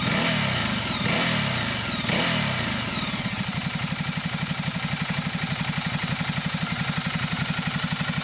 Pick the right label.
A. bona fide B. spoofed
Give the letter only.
A